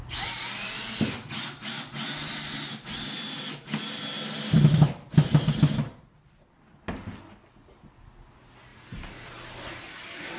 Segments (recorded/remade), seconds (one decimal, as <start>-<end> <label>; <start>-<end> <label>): 0.0-10.4 recorded